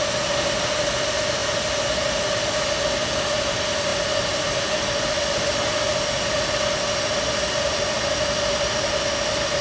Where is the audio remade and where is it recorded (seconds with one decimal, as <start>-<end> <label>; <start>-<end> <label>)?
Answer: 0.0-9.6 recorded